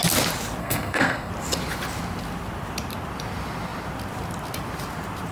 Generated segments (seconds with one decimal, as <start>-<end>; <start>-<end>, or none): 0.6-1.3